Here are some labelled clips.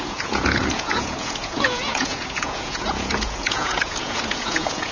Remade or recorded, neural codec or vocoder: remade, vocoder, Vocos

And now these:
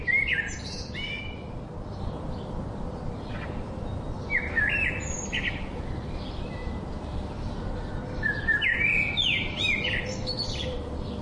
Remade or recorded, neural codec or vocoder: recorded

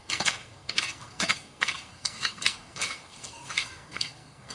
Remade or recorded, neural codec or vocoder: remade, codec, SNAC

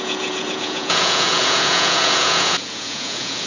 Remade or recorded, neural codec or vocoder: remade, vocoder, Vocos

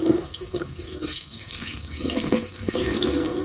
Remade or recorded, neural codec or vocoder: remade, codec, SNAC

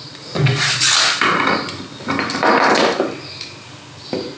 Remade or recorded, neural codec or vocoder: recorded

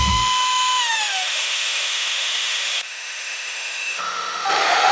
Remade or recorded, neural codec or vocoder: remade, autoencoder, DAC-VAE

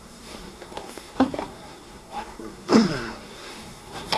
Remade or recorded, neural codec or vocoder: remade, codec, SNAC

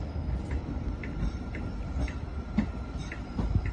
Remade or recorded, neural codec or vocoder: recorded